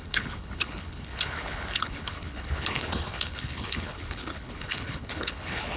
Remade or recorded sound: remade